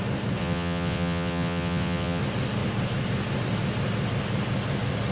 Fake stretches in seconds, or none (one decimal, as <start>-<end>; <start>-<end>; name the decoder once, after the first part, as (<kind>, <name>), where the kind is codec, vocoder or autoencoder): 0.4-2.2 (vocoder, WaveNeXt)